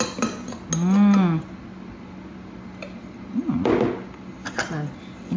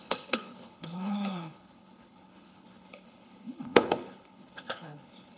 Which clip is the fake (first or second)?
second